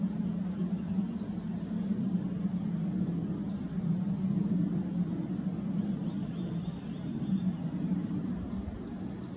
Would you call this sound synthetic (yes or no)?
no